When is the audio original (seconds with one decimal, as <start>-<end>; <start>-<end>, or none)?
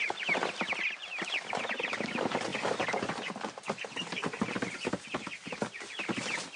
0.0-6.6